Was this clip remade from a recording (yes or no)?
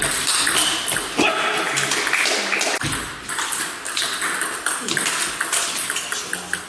no